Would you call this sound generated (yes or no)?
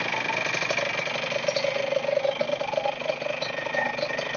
no